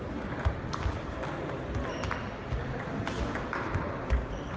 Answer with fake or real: real